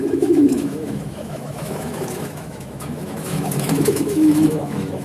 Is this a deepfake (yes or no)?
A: yes